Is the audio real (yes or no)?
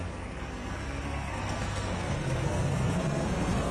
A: no